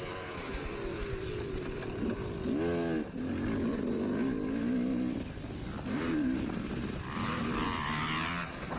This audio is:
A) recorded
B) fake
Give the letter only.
A